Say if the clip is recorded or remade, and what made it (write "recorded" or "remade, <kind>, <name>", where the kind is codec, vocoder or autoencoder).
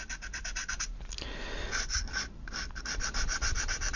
recorded